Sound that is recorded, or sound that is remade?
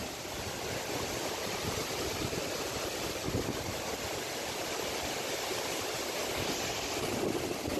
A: recorded